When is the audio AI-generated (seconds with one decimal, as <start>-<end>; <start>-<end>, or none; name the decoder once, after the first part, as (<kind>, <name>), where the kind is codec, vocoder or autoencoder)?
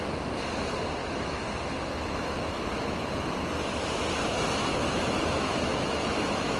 1.0-3.3 (autoencoder, DAC-VAE); 4.7-6.6